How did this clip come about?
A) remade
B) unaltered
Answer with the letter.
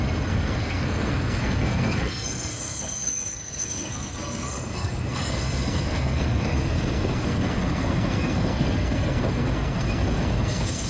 A